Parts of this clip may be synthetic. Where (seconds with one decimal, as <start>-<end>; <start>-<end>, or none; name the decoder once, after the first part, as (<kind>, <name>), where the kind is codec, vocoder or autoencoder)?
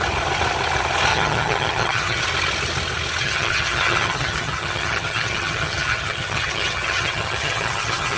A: 1.1-2.2 (vocoder, HiFi-GAN); 3.2-8.2